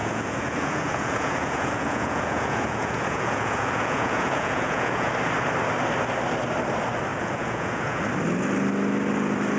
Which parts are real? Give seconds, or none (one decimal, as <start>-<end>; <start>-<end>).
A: 5.1-7.1; 8.0-9.6

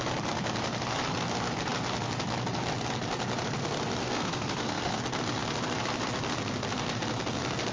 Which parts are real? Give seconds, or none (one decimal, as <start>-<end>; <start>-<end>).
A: 0.0-4.0; 5.0-7.7